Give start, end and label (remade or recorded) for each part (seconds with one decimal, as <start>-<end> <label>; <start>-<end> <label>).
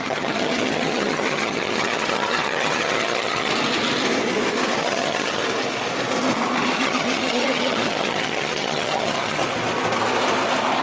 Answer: 0.0-3.5 remade; 3.5-4.8 recorded; 4.8-5.4 remade; 5.4-6.8 recorded; 6.8-9.4 remade; 9.4-10.8 recorded